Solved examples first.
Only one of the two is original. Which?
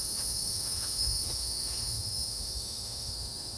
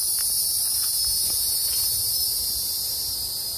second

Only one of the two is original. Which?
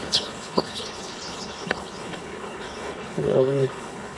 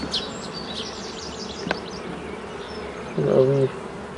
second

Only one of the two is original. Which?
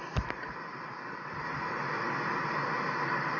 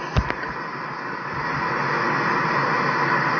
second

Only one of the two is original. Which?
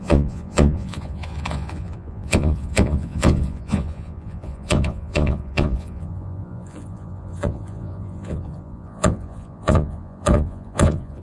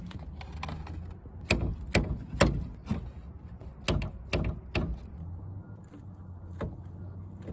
second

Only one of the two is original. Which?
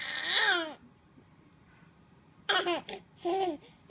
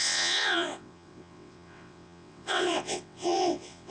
first